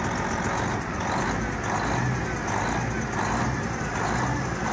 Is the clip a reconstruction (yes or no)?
no